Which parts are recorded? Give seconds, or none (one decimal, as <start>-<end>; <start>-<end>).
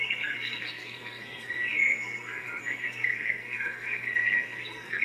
none